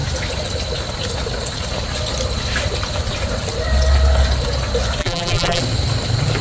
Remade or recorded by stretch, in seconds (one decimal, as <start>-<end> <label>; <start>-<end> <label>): 0.0-5.0 recorded; 5.0-5.6 remade; 5.6-6.4 recorded